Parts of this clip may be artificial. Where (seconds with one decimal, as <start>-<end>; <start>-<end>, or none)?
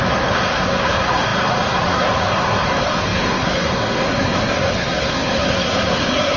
0.0-6.4